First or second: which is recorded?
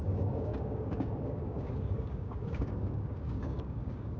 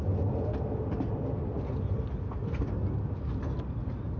second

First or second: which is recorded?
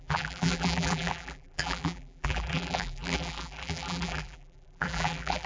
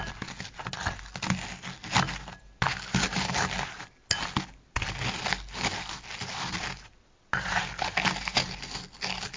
second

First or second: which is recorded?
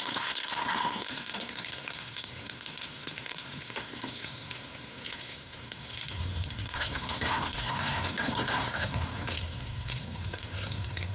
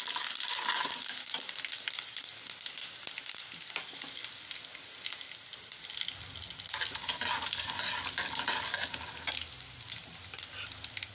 second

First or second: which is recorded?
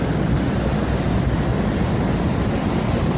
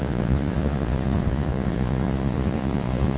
first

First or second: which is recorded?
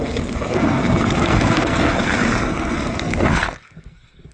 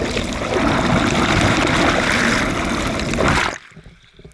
second